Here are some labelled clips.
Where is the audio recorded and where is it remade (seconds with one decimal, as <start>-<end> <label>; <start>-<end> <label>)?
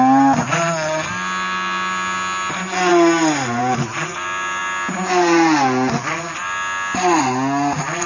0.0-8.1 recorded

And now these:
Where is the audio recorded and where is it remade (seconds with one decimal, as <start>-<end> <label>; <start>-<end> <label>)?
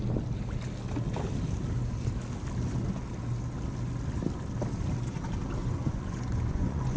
0.0-5.6 recorded; 5.6-7.0 remade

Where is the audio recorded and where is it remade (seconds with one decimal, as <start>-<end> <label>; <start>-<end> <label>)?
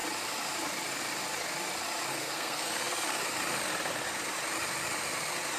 0.0-2.1 recorded; 2.1-2.7 remade; 2.7-5.6 recorded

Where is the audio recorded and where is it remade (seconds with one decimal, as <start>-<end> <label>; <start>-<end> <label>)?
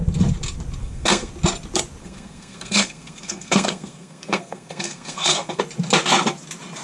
0.0-0.8 recorded; 0.8-1.3 remade; 1.3-2.0 recorded; 2.0-5.6 remade; 5.6-6.8 recorded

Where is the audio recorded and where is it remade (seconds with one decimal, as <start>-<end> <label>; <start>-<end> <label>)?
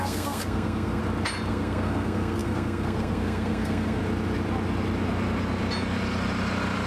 0.0-1.0 remade; 1.0-1.5 recorded; 1.5-4.0 remade; 4.0-6.9 recorded